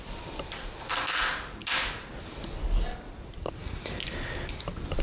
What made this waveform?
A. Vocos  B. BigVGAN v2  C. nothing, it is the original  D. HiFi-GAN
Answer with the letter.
C